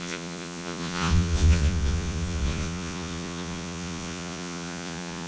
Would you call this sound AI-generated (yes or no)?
yes